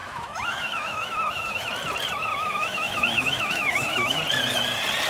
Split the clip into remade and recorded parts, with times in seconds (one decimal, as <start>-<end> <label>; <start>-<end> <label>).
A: 0.0-1.7 remade; 1.7-2.3 recorded; 2.3-4.2 remade; 4.2-5.1 recorded

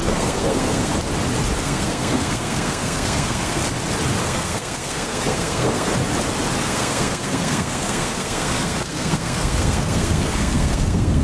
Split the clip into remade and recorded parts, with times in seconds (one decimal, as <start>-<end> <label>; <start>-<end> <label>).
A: 0.0-0.9 remade; 0.9-1.6 recorded; 1.6-3.6 remade; 3.6-4.2 recorded; 4.2-5.9 remade; 5.9-6.6 recorded; 6.6-11.2 remade

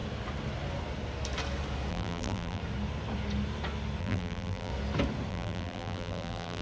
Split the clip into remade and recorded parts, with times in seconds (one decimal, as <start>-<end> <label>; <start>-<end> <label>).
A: 0.0-1.9 recorded; 1.9-2.6 remade; 2.6-4.0 recorded; 4.0-4.7 remade; 4.7-5.3 recorded; 5.3-6.6 remade

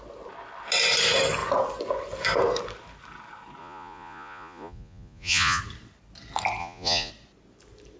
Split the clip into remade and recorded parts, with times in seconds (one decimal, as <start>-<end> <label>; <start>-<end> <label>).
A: 0.0-3.6 recorded; 3.6-5.6 remade; 5.6-6.6 recorded; 6.6-7.1 remade; 7.1-8.0 recorded

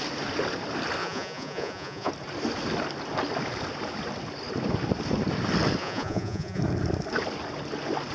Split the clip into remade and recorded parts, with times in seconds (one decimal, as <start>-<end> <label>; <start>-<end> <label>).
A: 0.0-1.0 recorded; 1.0-2.1 remade; 2.1-5.8 recorded; 5.8-6.6 remade; 6.6-8.1 recorded

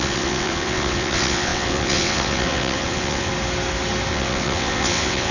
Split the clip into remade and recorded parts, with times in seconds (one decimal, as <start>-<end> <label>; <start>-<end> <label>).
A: 0.0-3.3 remade; 3.3-4.1 recorded; 4.1-5.3 remade

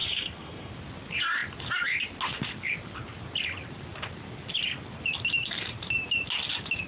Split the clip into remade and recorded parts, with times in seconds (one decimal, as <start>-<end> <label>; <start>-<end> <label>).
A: 0.0-0.7 remade; 0.7-6.9 recorded

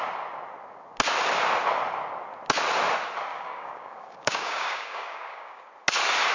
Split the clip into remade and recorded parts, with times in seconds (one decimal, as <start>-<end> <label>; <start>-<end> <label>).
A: 0.0-3.3 recorded; 3.3-5.6 remade; 5.6-6.3 recorded